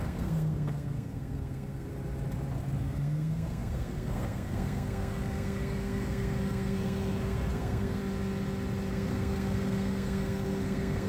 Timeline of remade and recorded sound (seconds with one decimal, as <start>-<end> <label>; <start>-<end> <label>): 0.0-1.9 remade; 1.9-2.8 recorded; 2.8-8.0 remade; 8.0-8.9 recorded; 8.9-11.1 remade